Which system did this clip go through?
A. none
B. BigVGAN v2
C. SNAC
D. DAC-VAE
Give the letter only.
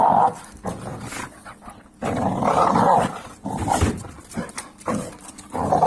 B